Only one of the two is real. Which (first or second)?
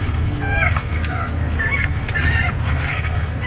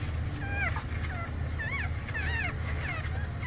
second